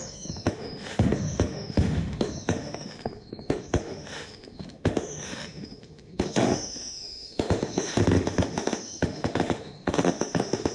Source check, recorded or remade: remade